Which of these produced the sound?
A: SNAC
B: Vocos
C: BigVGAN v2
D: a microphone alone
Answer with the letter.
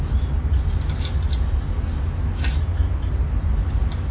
D